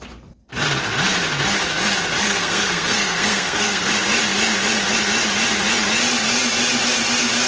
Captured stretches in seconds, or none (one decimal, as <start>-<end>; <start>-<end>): 0.0-2.2; 3.9-7.5